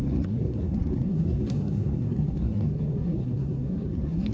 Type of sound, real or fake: fake